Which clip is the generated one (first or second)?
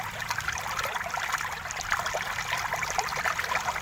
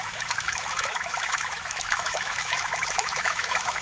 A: second